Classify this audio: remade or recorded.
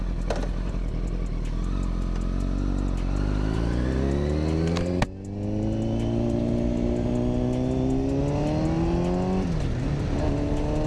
recorded